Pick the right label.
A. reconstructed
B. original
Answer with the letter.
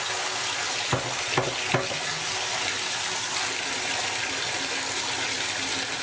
B